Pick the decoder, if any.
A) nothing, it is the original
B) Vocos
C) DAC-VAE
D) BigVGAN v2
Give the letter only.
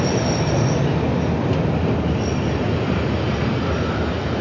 A